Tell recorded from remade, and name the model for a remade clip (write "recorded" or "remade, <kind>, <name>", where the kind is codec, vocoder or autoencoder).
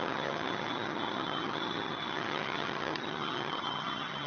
remade, vocoder, HiFi-GAN